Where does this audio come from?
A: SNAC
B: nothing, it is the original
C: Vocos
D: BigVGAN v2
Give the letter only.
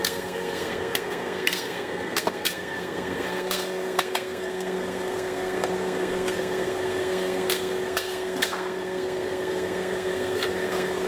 A